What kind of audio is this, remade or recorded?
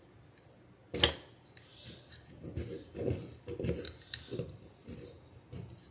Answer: recorded